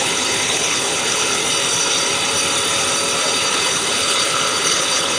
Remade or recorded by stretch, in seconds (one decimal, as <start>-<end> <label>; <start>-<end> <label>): 0.0-1.4 remade; 1.4-3.5 recorded; 3.5-5.2 remade

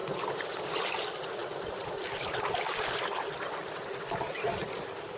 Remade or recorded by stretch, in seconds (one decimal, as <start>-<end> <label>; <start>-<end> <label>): 0.0-5.2 recorded

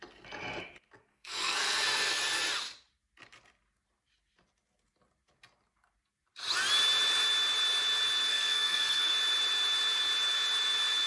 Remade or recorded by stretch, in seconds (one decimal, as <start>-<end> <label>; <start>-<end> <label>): 0.0-1.1 recorded; 1.1-2.2 remade; 2.2-8.3 recorded; 8.3-9.1 remade; 9.1-11.1 recorded

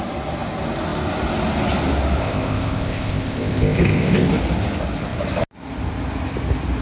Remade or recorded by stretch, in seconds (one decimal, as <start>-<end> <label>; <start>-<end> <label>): 0.0-2.2 recorded; 2.2-4.3 remade; 4.3-6.8 recorded

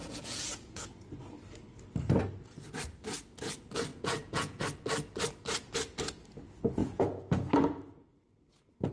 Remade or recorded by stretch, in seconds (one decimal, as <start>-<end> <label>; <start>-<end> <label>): 0.0-0.9 remade; 0.9-3.9 recorded; 3.9-4.6 remade; 4.6-6.8 recorded; 6.8-7.5 remade; 7.5-8.9 recorded

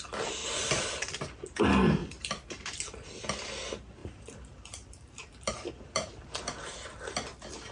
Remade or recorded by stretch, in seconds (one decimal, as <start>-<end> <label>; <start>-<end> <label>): 0.0-0.4 recorded; 0.4-1.1 remade; 1.1-4.0 recorded; 4.0-6.4 remade; 6.4-7.7 recorded